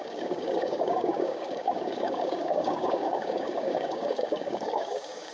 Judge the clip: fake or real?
fake